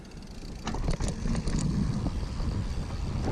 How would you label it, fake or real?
real